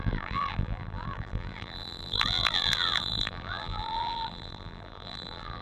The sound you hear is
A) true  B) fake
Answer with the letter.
B